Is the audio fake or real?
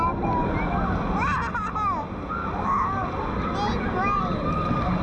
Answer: real